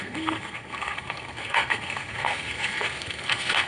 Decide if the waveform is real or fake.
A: fake